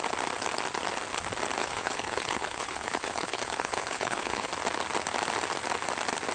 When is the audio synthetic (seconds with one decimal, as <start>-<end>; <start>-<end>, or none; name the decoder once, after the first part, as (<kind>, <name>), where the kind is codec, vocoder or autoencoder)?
1.6-4.5 (codec, HILCodec)